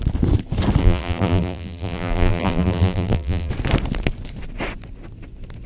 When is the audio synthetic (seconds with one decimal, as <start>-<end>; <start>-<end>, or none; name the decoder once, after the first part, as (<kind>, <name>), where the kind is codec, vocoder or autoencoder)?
0.8-3.5 (vocoder, BigVGAN v2)